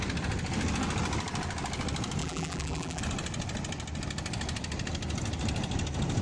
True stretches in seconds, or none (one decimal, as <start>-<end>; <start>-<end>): 0.0-2.2; 3.0-6.2